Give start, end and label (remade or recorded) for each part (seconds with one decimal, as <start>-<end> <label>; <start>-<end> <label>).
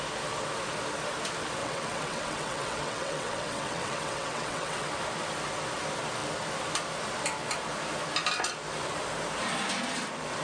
0.0-1.6 recorded; 1.6-4.9 remade; 4.9-10.4 recorded